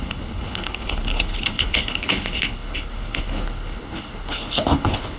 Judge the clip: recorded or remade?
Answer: remade